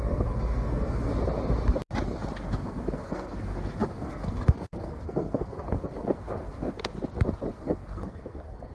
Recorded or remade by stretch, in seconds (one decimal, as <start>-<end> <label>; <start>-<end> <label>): 0.0-1.1 remade; 1.1-2.4 recorded; 2.4-6.9 remade; 6.9-7.5 recorded; 7.5-8.7 remade